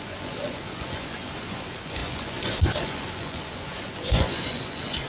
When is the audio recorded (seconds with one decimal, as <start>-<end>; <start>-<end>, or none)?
none